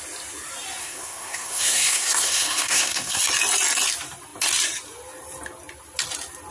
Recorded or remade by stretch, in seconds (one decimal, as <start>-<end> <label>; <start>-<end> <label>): 0.0-0.8 recorded; 0.8-3.2 remade; 3.2-6.5 recorded